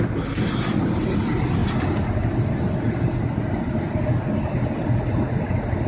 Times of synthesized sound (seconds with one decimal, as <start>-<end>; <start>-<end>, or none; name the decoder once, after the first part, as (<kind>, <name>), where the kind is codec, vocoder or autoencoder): none